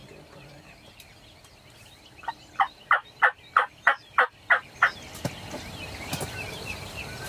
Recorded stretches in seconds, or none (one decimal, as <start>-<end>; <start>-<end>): 0.0-7.3